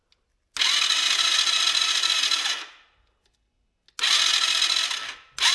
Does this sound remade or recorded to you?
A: recorded